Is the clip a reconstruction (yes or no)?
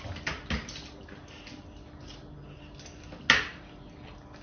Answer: no